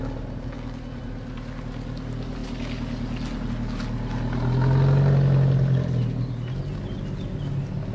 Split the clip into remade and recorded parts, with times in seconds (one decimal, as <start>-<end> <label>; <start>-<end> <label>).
0.0-7.9 recorded